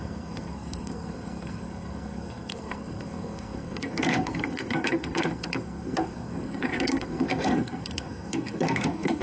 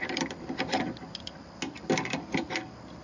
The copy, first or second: first